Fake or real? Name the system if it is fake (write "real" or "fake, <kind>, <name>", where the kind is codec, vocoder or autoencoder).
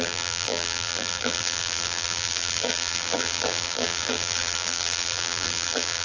fake, vocoder, BigVGAN v2